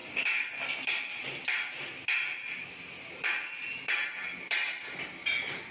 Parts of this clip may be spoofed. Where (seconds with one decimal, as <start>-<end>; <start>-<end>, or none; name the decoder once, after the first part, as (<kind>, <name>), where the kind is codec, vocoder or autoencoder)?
none